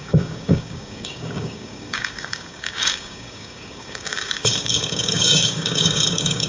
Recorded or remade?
remade